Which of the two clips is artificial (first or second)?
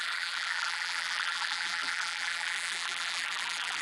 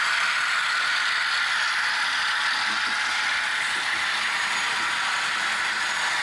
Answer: first